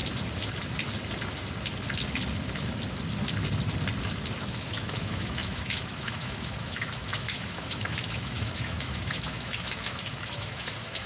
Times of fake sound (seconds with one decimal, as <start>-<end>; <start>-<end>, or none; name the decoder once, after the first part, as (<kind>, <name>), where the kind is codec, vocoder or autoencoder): 4.4-11.1 (autoencoder, DAC-VAE)